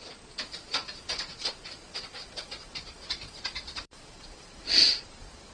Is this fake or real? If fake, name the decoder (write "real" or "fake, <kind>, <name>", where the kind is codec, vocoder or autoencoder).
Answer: fake, vocoder, Vocos